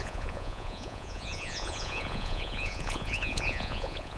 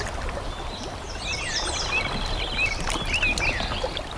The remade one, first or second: first